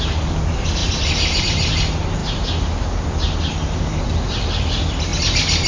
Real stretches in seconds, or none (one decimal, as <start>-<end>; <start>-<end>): 0.0-5.7

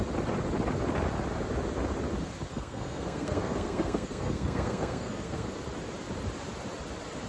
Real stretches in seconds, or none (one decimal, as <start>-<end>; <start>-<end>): 0.0-2.5; 5.5-7.3